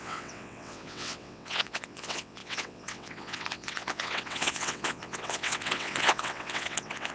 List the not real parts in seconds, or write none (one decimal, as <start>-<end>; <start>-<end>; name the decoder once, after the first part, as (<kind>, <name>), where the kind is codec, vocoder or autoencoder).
0.0-7.1 (vocoder, WaveNeXt)